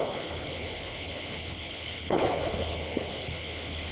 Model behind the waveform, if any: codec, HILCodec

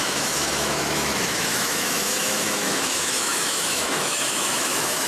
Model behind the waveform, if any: autoencoder, DAC-VAE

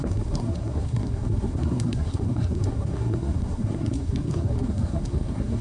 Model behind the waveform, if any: codec, SNAC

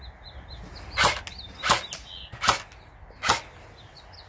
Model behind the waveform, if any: none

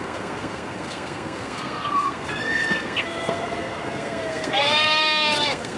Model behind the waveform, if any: codec, SNAC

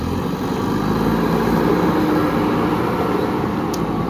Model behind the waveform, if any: none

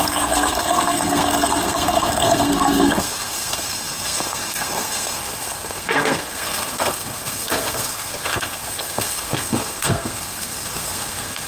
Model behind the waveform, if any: codec, SNAC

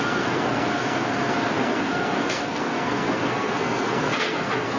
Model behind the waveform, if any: codec, SNAC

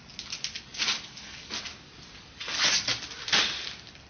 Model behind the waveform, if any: none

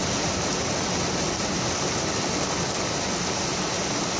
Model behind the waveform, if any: none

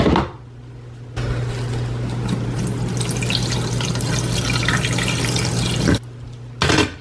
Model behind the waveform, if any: none